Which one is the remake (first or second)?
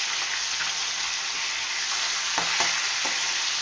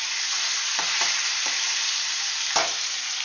second